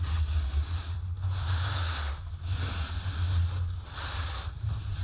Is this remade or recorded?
recorded